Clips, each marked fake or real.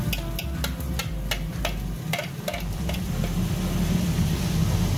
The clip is real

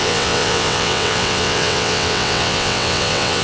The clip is fake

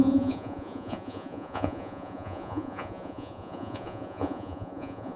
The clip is fake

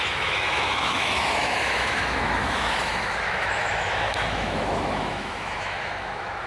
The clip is fake